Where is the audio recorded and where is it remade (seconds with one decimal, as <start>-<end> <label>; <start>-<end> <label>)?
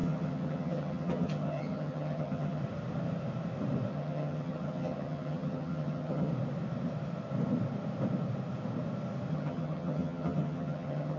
0.0-2.6 remade; 2.6-3.9 recorded; 3.9-6.3 remade; 6.3-9.3 recorded; 9.3-11.2 remade